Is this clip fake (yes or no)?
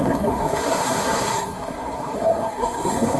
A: yes